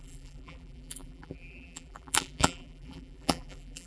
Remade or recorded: remade